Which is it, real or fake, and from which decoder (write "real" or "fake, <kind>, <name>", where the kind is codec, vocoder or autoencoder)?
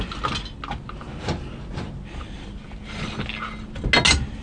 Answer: real